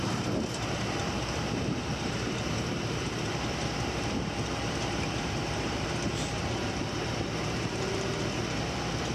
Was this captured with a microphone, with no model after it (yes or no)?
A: no